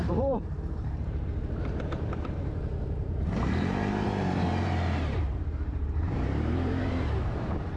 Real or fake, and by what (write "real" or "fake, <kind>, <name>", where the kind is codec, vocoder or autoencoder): fake, vocoder, BigVGAN v2